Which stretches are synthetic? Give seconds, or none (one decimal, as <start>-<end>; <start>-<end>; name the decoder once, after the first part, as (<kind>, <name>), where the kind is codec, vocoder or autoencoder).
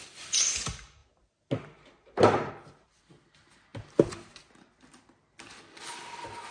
none